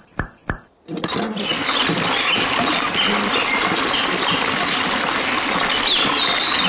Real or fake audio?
real